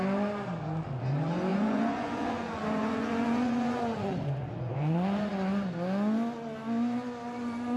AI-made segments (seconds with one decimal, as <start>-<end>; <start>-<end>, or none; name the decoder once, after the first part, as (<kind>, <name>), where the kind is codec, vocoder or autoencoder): 1.5-5.3 (vocoder, Vocos)